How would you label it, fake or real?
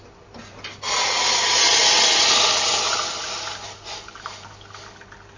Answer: real